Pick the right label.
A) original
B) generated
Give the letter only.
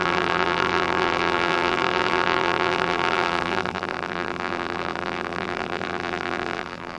B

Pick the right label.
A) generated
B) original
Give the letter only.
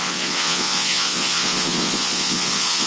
A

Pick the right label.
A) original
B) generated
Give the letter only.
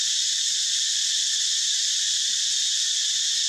B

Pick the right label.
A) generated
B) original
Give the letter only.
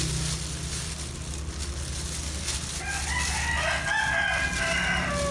B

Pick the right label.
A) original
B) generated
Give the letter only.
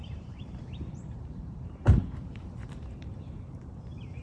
B